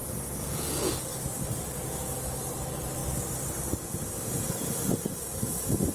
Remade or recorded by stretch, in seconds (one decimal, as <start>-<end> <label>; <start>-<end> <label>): 0.0-0.9 remade; 0.9-5.9 recorded

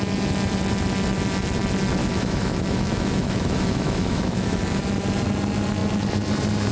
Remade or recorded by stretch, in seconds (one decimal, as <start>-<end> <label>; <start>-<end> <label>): 0.0-2.0 recorded; 2.0-4.8 remade; 4.8-6.7 recorded

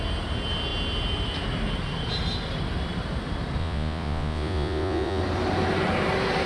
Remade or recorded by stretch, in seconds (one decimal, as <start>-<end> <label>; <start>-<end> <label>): 0.0-3.6 recorded; 3.6-5.2 remade; 5.2-6.5 recorded

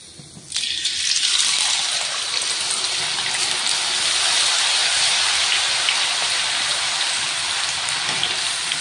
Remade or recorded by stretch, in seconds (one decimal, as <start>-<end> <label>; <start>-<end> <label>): 0.0-8.8 recorded